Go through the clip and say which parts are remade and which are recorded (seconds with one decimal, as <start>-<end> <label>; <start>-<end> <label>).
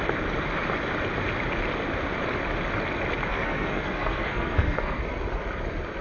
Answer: 0.0-3.3 recorded; 3.3-5.0 remade; 5.0-6.0 recorded